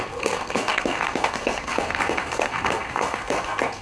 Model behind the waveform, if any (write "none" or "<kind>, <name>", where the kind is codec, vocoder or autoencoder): codec, SNAC